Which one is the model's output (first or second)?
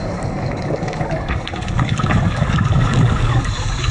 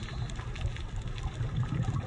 first